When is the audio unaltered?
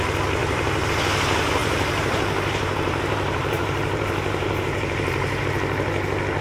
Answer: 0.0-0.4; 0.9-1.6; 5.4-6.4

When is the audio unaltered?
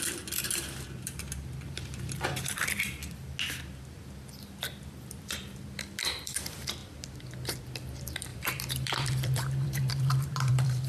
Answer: 3.0-4.9; 6.8-7.6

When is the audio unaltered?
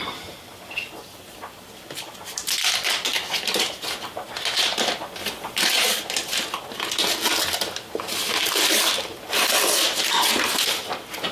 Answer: 0.0-3.1; 3.6-5.2; 5.7-8.4; 10.0-11.3